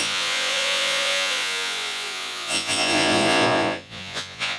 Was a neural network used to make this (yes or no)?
yes